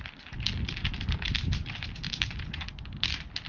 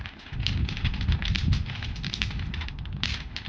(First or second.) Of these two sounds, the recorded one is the first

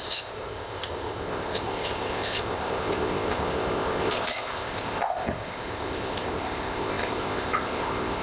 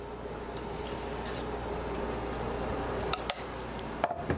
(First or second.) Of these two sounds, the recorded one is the second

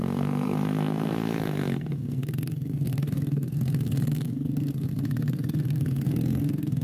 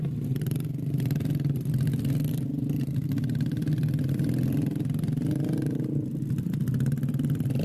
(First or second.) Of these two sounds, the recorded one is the second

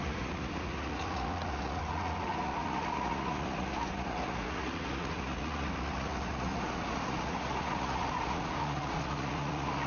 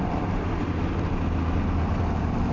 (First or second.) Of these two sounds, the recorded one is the second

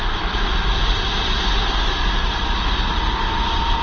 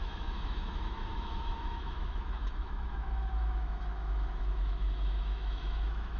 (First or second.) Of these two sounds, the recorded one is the first